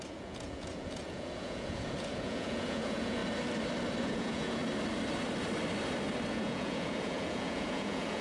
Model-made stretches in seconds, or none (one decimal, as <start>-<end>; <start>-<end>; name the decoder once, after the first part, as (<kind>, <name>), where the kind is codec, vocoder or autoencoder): 0.0-3.2 (vocoder, Vocos); 4.0-4.6; 6.3-8.2

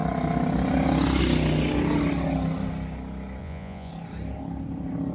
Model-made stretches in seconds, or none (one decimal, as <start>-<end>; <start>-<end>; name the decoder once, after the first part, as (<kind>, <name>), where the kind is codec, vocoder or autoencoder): 3.4-3.9 (vocoder, Vocos)

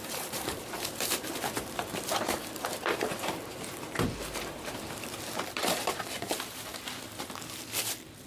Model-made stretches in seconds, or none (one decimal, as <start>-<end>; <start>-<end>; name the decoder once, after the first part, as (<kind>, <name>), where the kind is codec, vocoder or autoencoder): 0.0-6.7 (vocoder, BigVGAN v2)

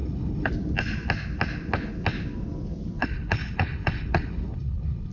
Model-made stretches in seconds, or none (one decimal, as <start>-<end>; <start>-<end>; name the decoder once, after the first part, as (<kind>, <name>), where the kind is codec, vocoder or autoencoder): 0.0-0.5 (codec, HILCodec); 3.0-5.1

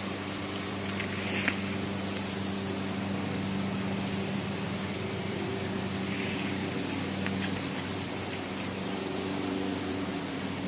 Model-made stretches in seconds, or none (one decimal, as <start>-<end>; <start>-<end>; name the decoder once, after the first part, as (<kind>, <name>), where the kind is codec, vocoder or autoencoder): 0.0-6.6 (vocoder, BigVGAN v2); 7.3-10.7